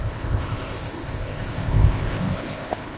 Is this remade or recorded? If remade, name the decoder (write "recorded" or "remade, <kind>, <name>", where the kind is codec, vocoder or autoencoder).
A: remade, codec, ZipCodec